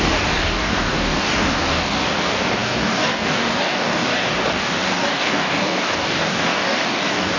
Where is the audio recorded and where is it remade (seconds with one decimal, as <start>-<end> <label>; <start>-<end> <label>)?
0.0-7.4 remade